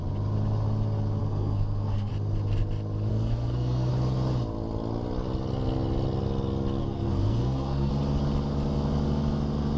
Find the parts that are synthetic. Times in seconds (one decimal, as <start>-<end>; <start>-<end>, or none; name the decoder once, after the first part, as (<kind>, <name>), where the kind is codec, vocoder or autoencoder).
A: 1.2-2.1 (codec, SNAC); 3.1-3.9; 6.8-7.9